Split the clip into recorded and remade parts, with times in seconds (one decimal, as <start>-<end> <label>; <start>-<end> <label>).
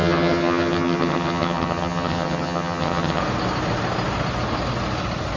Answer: 0.0-3.2 remade; 3.2-5.4 recorded